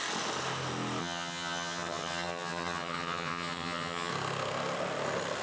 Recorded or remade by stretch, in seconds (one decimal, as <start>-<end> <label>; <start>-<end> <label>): 0.0-1.0 recorded; 1.0-4.1 remade; 4.1-5.4 recorded